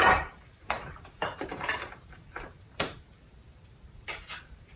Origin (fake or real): fake